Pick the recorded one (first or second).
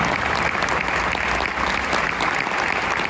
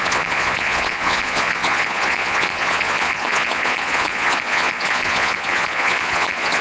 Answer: first